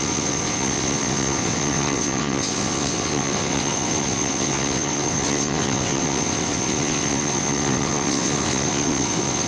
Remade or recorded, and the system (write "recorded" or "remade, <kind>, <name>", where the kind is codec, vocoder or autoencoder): remade, vocoder, WaveNeXt